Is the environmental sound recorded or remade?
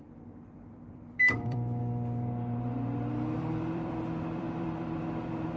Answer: remade